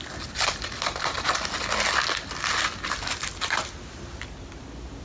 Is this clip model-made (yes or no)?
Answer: no